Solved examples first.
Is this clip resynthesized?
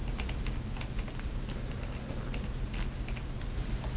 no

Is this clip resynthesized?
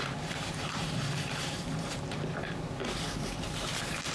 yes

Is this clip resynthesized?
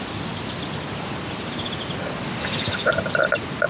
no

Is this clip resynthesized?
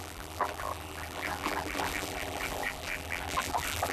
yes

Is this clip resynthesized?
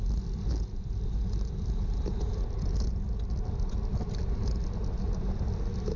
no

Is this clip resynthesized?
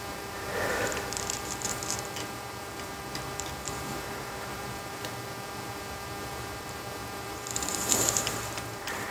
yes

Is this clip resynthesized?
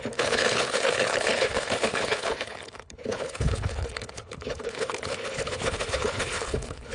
yes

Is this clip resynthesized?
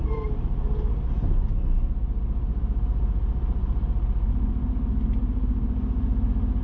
no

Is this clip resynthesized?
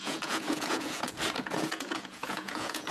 yes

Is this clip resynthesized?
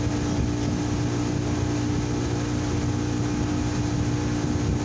no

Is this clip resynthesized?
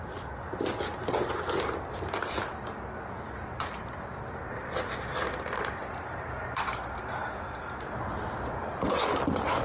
no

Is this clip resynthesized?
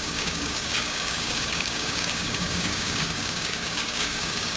yes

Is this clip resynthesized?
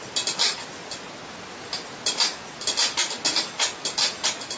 no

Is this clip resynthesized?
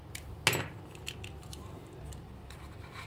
no